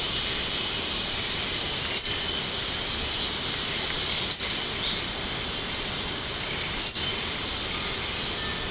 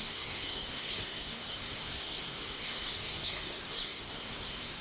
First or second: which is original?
first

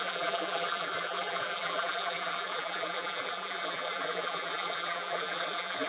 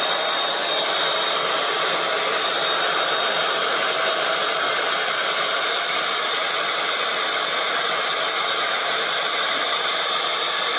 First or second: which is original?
second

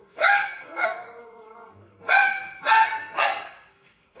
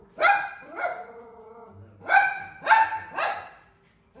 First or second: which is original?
second